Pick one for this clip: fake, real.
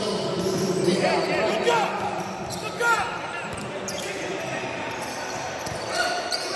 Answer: fake